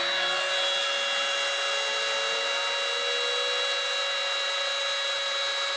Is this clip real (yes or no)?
yes